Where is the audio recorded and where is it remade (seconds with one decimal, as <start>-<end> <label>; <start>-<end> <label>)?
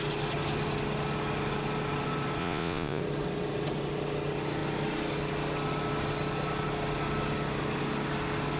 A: 0.0-2.4 recorded; 2.4-3.0 remade; 3.0-8.6 recorded